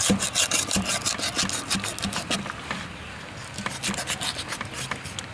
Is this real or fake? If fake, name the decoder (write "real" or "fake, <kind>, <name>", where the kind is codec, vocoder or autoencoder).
real